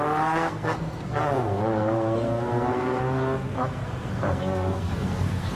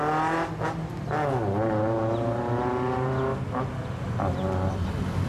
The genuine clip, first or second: second